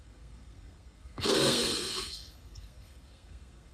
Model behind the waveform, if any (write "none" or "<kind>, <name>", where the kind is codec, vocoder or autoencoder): codec, SNAC